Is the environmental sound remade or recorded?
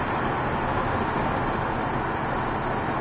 recorded